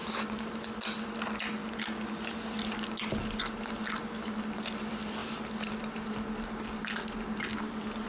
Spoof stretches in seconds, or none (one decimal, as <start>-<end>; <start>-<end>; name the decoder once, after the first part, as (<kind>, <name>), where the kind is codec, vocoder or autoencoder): none